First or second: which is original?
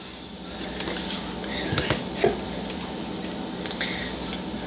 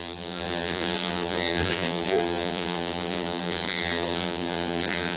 first